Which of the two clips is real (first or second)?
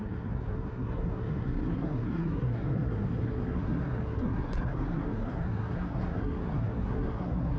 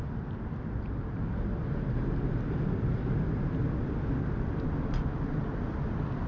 second